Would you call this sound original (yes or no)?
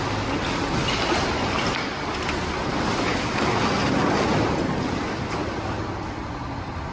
yes